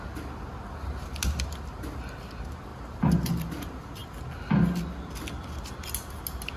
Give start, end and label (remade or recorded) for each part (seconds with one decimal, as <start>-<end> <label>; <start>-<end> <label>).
0.0-6.6 recorded